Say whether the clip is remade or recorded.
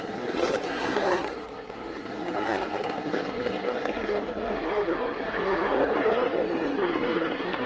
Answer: remade